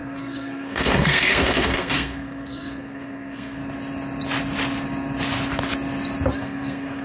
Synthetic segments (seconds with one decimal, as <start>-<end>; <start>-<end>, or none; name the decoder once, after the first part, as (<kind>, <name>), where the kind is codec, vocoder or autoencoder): 0.0-3.6 (codec, SNAC); 6.3-7.0